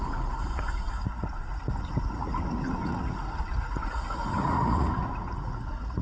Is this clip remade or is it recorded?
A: remade